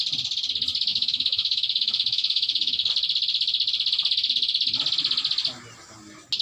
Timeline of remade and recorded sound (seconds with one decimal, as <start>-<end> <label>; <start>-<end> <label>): 0.0-0.9 recorded; 0.9-2.9 remade; 2.9-6.4 recorded

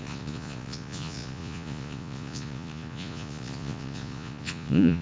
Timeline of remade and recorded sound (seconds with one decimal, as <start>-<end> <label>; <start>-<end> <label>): 0.0-5.0 remade

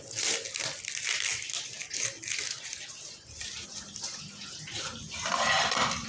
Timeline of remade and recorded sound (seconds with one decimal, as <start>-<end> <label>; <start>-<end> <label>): 0.0-6.1 recorded

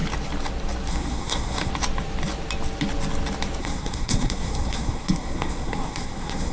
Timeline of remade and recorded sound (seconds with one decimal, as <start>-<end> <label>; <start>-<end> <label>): 0.0-0.9 recorded; 0.9-1.7 remade; 1.7-3.6 recorded; 3.6-6.5 remade